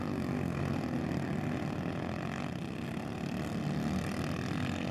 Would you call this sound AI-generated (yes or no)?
no